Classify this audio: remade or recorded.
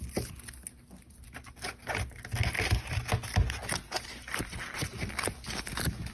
recorded